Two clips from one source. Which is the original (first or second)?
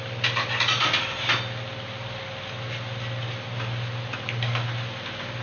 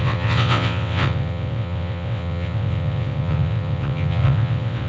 first